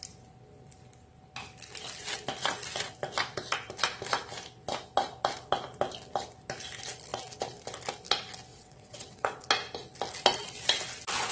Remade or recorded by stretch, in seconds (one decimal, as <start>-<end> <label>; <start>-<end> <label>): 0.0-8.5 recorded; 8.5-9.4 remade; 9.4-11.3 recorded